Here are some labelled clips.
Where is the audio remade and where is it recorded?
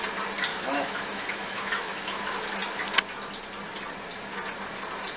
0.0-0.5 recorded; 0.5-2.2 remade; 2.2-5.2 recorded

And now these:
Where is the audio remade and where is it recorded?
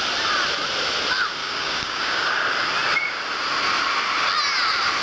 0.0-1.4 recorded; 1.4-2.3 remade; 2.3-5.0 recorded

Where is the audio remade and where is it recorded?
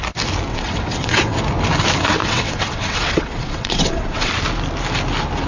0.0-0.5 recorded; 0.5-1.4 remade; 1.4-2.2 recorded; 2.2-4.3 remade; 4.3-5.5 recorded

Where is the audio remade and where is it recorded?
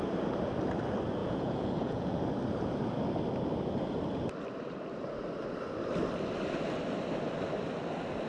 0.0-1.2 recorded; 1.2-2.2 remade; 2.2-8.3 recorded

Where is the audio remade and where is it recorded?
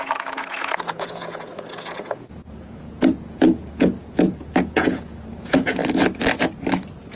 0.0-5.8 remade; 5.8-7.2 recorded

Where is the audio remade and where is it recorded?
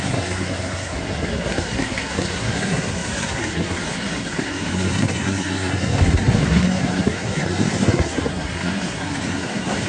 0.0-9.9 remade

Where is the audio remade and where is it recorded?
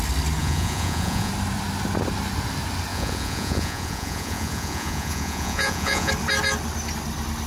0.0-0.4 recorded; 0.4-1.3 remade; 1.3-2.9 recorded; 2.9-6.1 remade; 6.1-7.5 recorded